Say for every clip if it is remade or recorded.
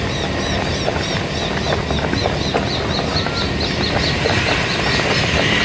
recorded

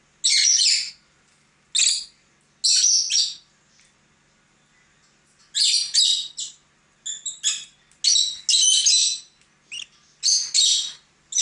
recorded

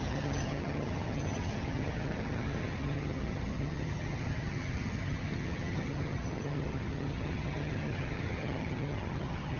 remade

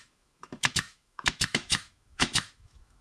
remade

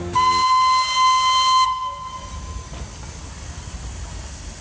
recorded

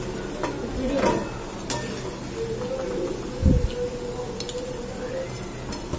recorded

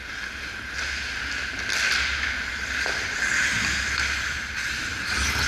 recorded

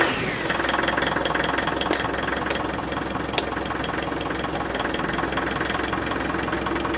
recorded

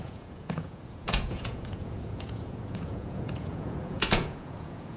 remade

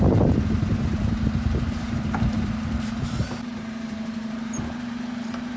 remade